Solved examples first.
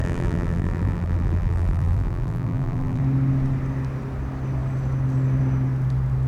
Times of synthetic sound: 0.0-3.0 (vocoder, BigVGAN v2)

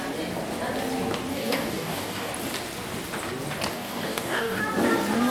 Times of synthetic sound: 1.3-2.3 (codec, DAC); 3.7-4.6

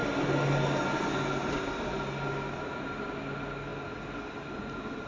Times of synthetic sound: none

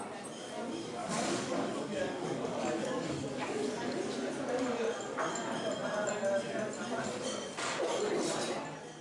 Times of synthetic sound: 1.0-4.0 (codec, DAC)

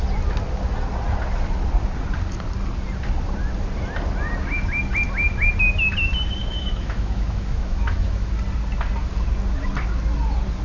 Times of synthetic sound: 6.4-8.3 (autoencoder, DAC-VAE)

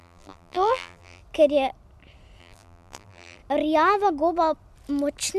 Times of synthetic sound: 0.0-1.2 (vocoder, BigVGAN v2); 2.4-3.4

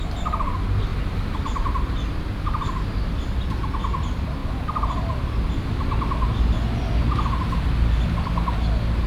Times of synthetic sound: 0.9-1.9 (vocoder, BigVGAN v2)

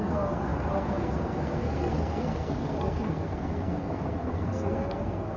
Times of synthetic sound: 0.0-5.4 (codec, SNAC)